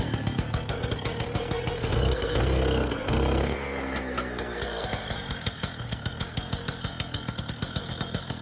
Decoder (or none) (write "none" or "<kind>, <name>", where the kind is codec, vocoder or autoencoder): codec, SNAC